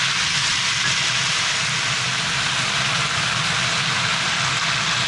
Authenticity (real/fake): real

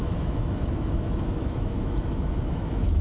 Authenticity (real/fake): fake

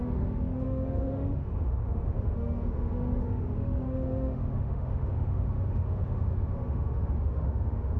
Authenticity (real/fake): fake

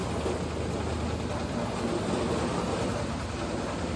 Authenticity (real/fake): real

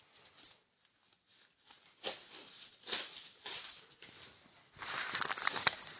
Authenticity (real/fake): real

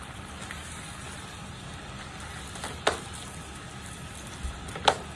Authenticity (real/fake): real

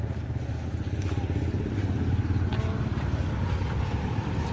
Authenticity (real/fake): real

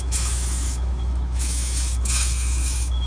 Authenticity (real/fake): fake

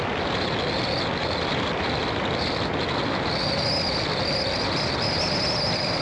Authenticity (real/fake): real